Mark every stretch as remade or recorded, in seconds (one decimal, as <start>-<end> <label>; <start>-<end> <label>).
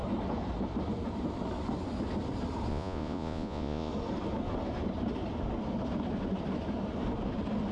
0.0-2.7 recorded; 2.7-3.9 remade; 3.9-7.7 recorded